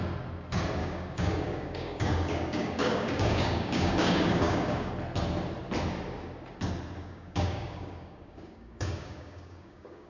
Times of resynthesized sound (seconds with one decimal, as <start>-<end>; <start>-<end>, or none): 0.8-4.9; 7.0-10.1